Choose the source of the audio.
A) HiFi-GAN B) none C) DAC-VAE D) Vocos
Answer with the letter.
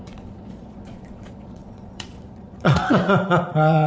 D